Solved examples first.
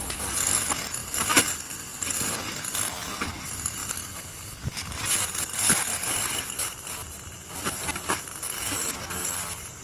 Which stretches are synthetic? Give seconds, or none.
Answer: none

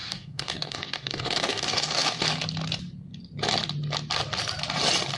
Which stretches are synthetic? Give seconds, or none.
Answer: 0.0-2.2 (codec, DAC)

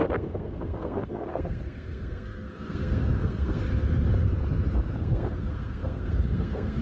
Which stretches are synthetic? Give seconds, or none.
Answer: 0.0-3.6 (codec, SNAC); 5.0-6.8

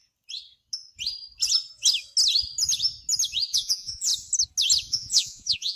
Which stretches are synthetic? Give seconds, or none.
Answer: 3.5-4.1 (vocoder, Vocos); 4.9-5.8

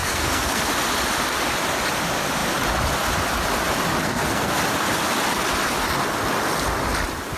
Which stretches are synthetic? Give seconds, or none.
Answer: 0.0-0.7 (codec, SNAC); 4.0-4.6

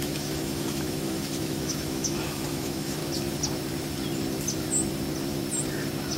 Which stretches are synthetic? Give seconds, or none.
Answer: 0.0-3.0 (autoencoder, DAC-VAE)